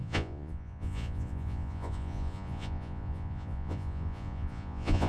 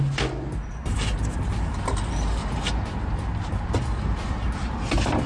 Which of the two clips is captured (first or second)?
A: second